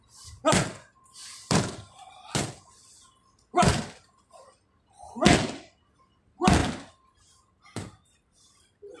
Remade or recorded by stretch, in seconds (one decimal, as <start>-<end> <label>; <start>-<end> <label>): 0.0-1.2 recorded; 1.2-3.7 remade; 3.7-6.6 recorded; 6.6-9.0 remade